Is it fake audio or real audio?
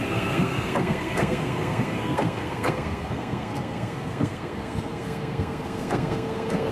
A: fake